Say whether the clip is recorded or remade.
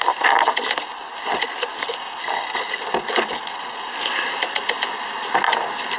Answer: recorded